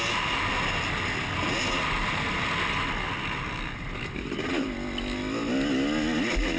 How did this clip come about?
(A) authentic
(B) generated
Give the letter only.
A